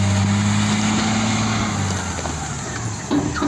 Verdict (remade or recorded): recorded